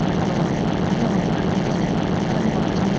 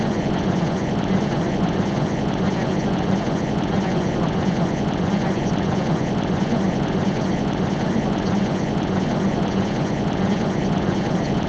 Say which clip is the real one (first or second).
first